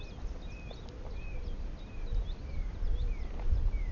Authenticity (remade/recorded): recorded